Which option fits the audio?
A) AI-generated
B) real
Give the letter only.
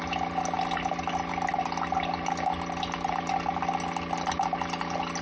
B